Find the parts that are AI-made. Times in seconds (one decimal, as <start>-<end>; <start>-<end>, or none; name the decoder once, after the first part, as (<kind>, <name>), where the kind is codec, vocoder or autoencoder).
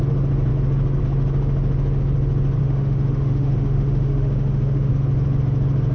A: 2.6-4.9 (autoencoder, DAC-VAE)